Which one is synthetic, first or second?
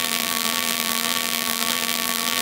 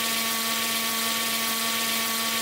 first